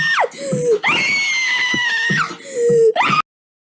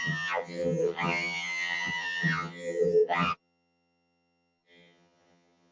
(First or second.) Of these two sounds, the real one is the first